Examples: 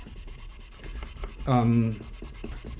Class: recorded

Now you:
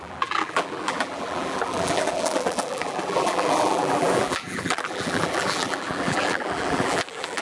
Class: remade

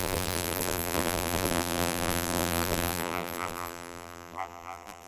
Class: remade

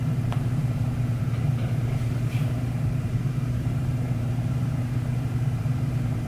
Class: remade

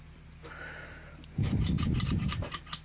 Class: remade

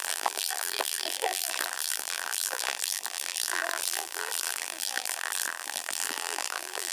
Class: remade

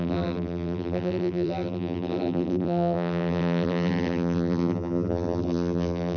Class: remade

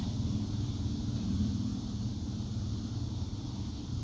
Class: remade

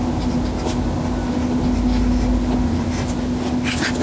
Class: recorded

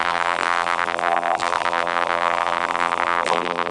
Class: remade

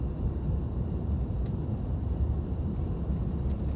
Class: remade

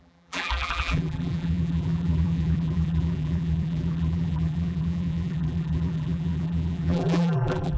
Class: remade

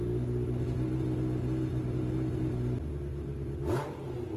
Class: recorded